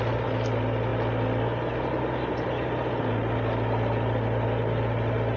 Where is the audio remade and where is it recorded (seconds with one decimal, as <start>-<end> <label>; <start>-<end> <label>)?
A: 0.0-5.4 recorded